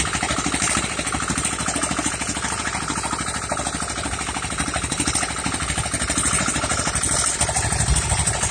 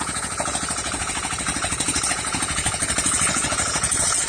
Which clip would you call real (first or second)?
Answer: first